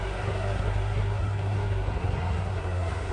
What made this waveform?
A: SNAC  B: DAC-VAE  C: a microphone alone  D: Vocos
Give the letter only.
A